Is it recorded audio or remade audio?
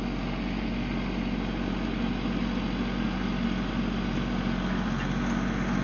recorded